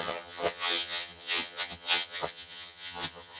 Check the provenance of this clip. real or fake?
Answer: fake